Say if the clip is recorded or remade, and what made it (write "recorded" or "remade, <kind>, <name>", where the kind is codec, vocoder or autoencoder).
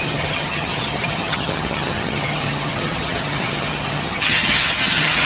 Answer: remade, vocoder, HiFi-GAN